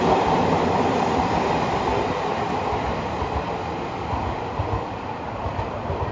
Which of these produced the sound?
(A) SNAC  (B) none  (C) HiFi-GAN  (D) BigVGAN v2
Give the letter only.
D